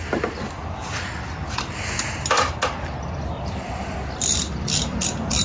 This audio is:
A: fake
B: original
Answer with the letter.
B